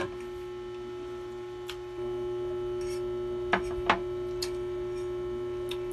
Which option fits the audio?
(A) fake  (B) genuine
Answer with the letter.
B